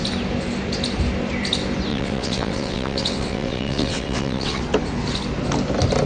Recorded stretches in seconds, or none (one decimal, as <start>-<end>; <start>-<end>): 0.0-1.9; 4.6-6.1